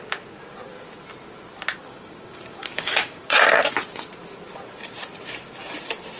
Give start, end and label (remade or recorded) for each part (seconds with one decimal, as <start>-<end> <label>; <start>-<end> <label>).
0.0-1.8 recorded; 1.8-3.5 remade; 3.5-6.2 recorded